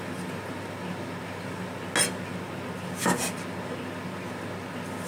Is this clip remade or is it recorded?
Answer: recorded